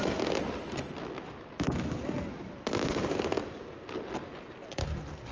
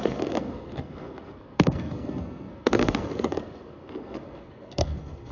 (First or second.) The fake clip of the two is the second